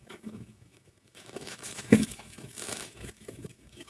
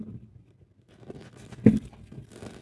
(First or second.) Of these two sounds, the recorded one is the second